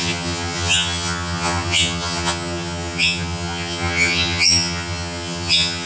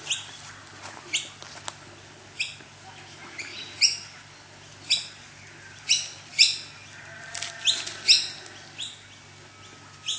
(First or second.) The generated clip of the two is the first